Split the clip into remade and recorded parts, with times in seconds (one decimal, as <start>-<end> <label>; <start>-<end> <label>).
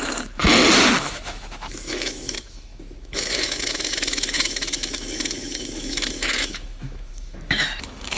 0.0-0.4 remade; 0.4-1.0 recorded; 1.0-8.2 remade